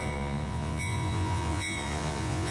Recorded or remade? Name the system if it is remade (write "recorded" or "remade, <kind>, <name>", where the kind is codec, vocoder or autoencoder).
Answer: remade, vocoder, Vocos